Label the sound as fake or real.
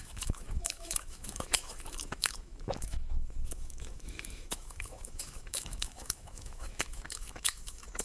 fake